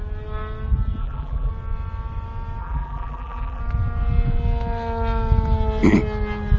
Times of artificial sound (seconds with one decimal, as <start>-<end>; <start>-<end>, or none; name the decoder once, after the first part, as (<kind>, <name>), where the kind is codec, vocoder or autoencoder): 1.0-1.5 (vocoder, BigVGAN v2); 2.6-3.6